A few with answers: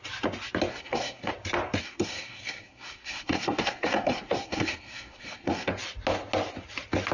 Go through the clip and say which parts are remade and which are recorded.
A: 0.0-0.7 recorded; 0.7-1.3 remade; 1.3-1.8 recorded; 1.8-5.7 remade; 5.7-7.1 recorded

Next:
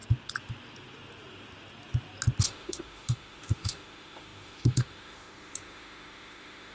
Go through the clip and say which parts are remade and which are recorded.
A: 0.0-2.4 recorded; 2.4-6.7 remade

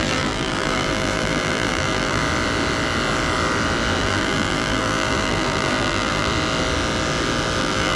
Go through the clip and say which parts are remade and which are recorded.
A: 0.0-2.2 remade; 2.2-4.0 recorded; 4.0-6.3 remade; 6.3-7.6 recorded; 7.6-8.0 remade

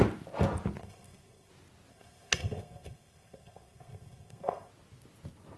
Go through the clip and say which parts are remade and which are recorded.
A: 0.0-0.8 recorded; 0.8-1.5 remade; 1.5-1.9 recorded; 1.9-4.7 remade; 4.7-5.6 recorded

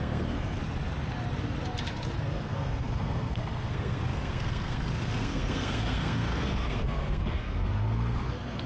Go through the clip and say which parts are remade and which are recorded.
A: 0.0-0.6 remade; 0.6-2.2 recorded; 2.2-8.7 remade

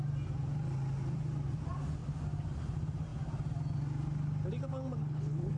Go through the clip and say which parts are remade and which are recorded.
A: 0.0-5.0 recorded; 5.0-5.6 remade